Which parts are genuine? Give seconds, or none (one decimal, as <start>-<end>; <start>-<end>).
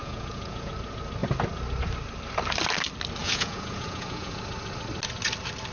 0.7-3.2; 4.4-5.7